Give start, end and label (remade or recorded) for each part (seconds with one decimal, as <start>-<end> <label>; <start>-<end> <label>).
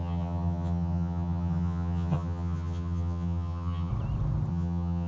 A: 0.0-3.9 remade; 3.9-4.5 recorded; 4.5-5.1 remade